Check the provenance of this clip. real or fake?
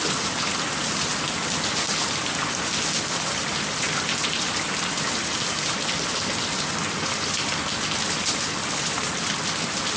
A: real